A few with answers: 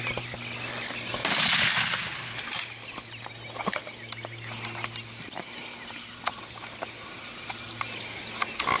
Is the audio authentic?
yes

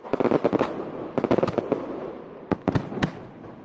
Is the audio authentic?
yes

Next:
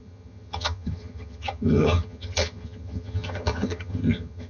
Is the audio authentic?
no